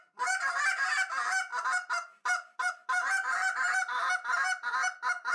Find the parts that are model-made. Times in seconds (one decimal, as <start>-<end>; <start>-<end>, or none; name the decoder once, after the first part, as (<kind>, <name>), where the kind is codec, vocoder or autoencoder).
none